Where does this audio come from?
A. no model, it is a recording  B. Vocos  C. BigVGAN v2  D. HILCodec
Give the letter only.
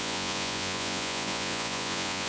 B